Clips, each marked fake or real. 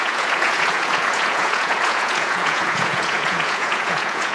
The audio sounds fake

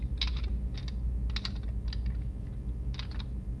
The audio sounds real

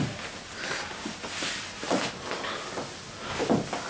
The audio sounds real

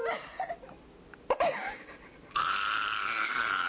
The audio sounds real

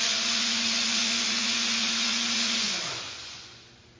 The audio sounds fake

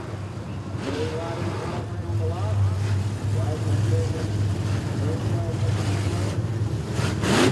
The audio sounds real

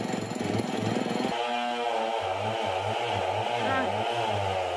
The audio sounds real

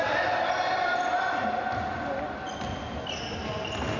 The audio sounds real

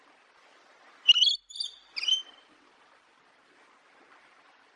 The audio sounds real